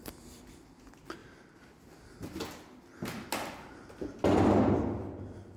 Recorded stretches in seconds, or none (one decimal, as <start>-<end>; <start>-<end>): 0.0-5.6

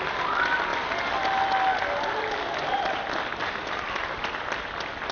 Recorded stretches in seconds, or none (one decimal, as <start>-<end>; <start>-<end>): 0.0-5.1

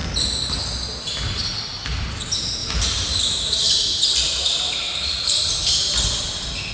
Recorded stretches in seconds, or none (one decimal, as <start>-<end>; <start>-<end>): 0.0-2.6

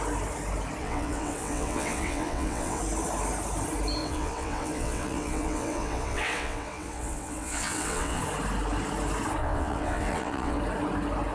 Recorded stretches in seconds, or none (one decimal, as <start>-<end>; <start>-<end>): 0.0-0.8; 2.8-4.0; 8.2-9.4; 10.6-11.3